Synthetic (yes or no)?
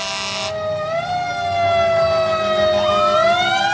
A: no